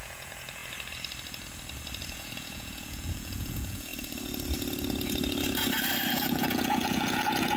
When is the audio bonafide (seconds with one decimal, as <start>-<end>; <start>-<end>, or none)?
0.6-2.1; 3.9-6.1